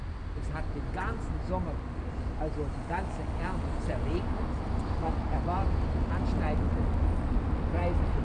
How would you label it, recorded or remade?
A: recorded